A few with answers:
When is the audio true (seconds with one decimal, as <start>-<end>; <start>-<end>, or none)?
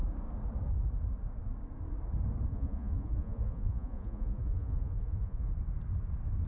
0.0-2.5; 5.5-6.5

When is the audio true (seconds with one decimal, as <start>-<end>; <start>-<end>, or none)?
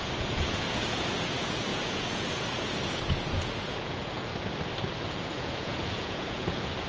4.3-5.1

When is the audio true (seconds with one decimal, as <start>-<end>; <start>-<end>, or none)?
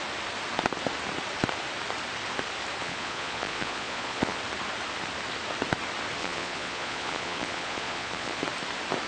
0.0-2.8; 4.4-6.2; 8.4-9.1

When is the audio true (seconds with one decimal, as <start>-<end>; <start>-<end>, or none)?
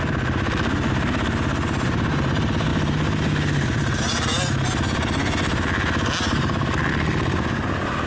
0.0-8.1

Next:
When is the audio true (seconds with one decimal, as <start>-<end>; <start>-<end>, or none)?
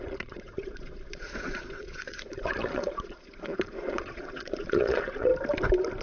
5.3-6.0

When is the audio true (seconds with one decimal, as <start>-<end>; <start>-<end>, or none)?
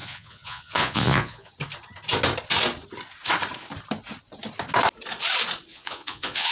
1.5-5.7